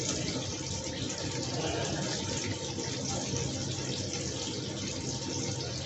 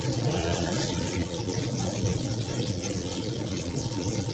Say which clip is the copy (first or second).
second